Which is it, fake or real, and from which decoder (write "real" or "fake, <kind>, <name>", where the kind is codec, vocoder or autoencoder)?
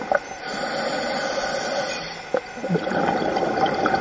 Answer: real